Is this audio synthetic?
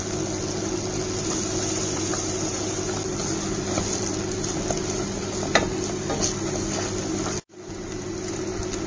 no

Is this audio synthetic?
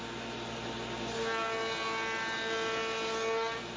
no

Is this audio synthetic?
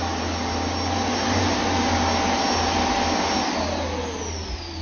no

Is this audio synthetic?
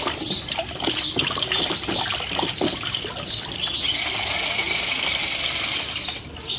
no